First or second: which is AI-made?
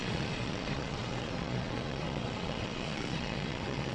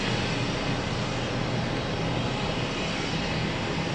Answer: first